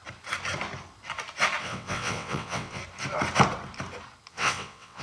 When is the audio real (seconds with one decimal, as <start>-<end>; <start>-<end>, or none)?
0.0-1.6; 2.8-4.3